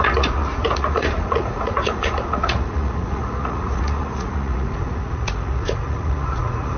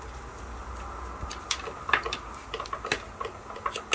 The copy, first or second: first